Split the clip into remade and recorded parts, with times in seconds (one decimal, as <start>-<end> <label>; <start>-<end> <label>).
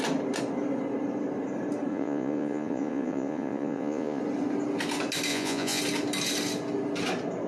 0.0-1.9 recorded; 1.9-4.2 remade; 4.2-5.3 recorded; 5.3-5.8 remade; 5.8-7.5 recorded